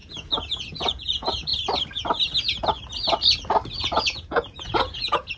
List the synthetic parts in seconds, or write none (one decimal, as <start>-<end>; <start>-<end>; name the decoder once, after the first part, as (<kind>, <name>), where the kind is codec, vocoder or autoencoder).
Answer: 0.0-1.5 (vocoder, Vocos); 3.8-5.4